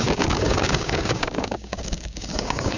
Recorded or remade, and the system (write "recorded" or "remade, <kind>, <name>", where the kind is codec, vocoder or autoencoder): remade, codec, DAC